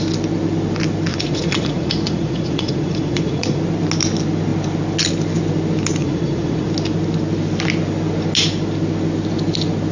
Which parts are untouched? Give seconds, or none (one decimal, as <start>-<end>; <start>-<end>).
0.0-1.1; 3.6-6.0; 6.7-9.9